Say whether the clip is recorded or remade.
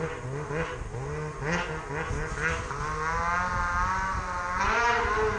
recorded